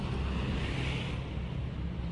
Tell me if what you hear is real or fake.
real